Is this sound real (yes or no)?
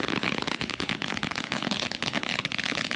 no